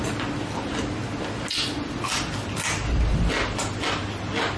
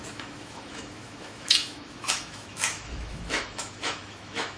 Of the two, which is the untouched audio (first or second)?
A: first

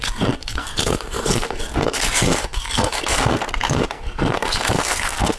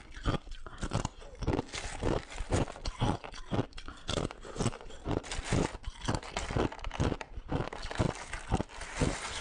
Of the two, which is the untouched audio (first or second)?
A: second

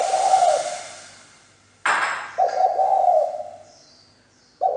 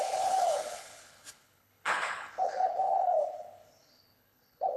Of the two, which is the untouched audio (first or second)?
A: first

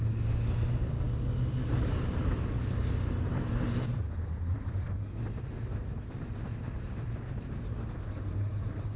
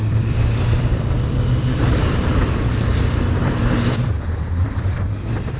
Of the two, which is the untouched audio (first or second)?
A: first